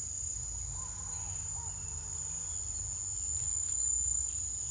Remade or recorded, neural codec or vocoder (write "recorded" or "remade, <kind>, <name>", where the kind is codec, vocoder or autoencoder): recorded